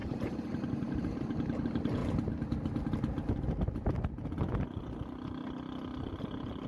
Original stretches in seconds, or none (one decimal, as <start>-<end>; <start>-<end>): 1.2-6.7